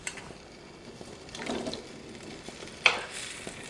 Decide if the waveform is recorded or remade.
remade